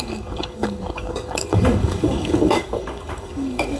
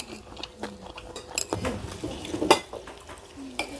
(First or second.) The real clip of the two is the second